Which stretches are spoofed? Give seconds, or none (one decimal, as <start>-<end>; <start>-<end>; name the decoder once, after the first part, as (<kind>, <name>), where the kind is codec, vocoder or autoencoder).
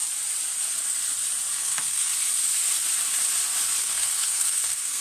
1.6-2.1 (codec, SNAC); 3.8-5.0